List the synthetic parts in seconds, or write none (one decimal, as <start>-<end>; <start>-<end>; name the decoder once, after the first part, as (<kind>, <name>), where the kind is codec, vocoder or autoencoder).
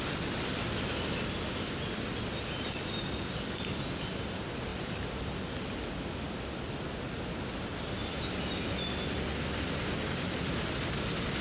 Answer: 4.7-5.2 (vocoder, BigVGAN v2)